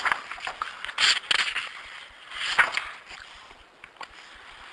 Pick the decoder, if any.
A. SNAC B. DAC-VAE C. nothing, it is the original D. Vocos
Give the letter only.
C